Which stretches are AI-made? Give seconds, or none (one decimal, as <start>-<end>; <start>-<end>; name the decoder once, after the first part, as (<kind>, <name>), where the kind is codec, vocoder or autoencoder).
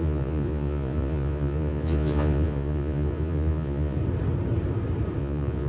0.0-4.0 (vocoder, Vocos); 5.2-5.7